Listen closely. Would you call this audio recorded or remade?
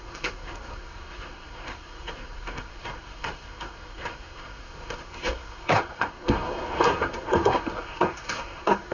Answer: remade